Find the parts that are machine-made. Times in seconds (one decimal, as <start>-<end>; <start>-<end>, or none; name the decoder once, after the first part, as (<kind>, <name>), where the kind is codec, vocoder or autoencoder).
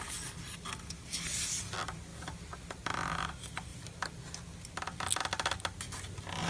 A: none